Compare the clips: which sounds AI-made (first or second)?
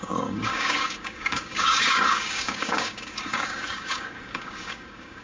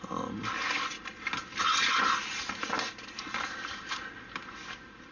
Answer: first